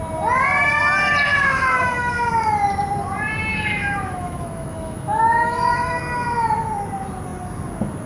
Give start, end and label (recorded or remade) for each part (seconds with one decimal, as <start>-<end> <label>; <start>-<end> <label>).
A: 0.0-1.3 recorded; 1.3-2.3 remade; 2.3-3.5 recorded; 3.5-6.0 remade; 6.0-8.1 recorded